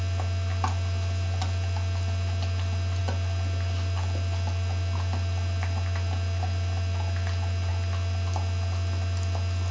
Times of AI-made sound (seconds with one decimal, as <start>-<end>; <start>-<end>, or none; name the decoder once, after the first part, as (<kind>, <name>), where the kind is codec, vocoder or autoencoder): none